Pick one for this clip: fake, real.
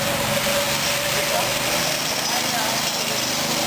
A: real